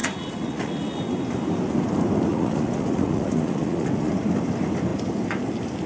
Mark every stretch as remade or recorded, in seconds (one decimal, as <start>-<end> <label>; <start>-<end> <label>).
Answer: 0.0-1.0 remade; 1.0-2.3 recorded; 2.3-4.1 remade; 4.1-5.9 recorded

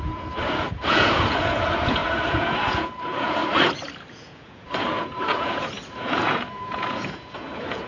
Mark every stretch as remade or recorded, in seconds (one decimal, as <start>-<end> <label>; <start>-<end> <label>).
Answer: 0.0-3.4 remade; 3.4-4.1 recorded; 4.1-7.9 remade

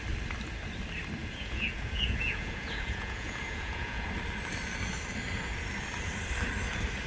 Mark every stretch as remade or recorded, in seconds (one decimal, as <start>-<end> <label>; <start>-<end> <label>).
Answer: 0.0-1.2 recorded; 1.2-4.1 remade; 4.1-7.1 recorded

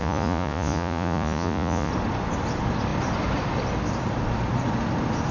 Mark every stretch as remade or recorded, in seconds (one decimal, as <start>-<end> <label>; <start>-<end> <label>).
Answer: 0.0-1.9 remade; 1.9-5.3 recorded

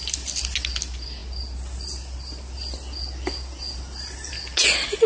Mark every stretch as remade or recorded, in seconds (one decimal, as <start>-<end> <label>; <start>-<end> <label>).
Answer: 0.0-5.1 recorded

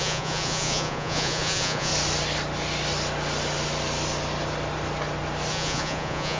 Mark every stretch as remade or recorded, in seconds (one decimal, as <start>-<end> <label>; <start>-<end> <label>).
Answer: 0.0-1.9 remade; 1.9-5.5 recorded; 5.5-6.4 remade

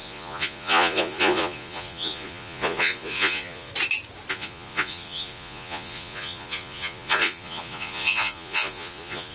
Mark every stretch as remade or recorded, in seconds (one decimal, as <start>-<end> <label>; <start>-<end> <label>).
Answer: 0.0-3.7 remade; 3.7-4.3 recorded; 4.3-9.3 remade